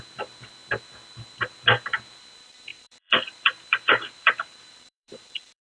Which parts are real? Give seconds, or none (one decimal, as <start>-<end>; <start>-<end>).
0.0-2.7